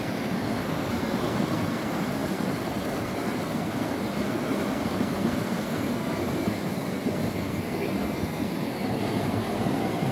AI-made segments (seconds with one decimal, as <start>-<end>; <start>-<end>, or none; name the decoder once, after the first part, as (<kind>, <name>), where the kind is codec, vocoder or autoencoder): 0.0-10.1 (codec, SNAC)